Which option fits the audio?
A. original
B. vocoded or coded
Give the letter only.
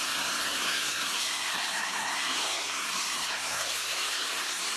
B